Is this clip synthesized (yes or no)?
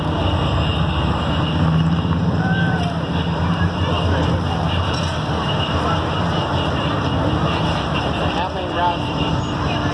yes